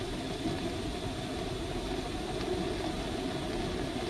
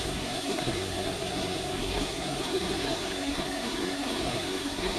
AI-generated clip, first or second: second